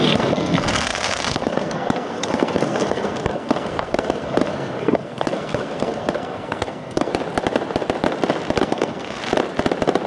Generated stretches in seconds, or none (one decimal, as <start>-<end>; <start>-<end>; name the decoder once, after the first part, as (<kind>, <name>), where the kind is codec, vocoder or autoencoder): 0.0-7.1 (codec, SNAC); 8.6-9.2